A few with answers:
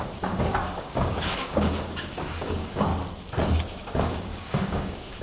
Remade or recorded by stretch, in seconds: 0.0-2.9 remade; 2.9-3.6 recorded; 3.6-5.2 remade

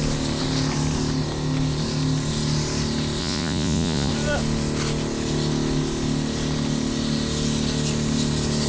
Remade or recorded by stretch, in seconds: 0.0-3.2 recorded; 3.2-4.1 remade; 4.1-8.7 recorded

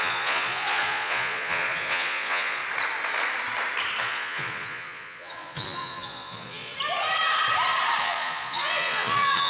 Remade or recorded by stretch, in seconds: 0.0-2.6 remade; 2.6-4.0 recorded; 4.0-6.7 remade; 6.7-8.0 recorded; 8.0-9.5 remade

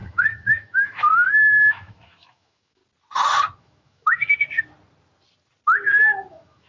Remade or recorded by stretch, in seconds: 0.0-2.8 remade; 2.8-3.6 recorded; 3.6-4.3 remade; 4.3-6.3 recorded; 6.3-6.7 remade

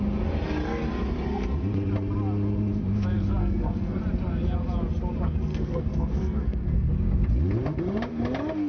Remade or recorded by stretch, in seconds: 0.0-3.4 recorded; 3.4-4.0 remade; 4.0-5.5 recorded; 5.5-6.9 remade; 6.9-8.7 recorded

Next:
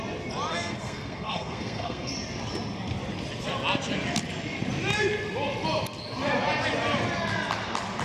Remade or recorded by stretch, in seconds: 0.0-0.5 recorded; 0.5-2.1 remade; 2.1-8.0 recorded

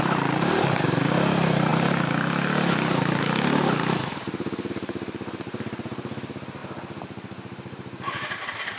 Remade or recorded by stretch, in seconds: 0.0-1.7 remade; 1.7-4.7 recorded; 4.7-8.8 remade

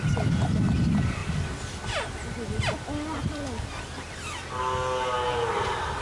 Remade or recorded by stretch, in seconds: 0.0-6.0 recorded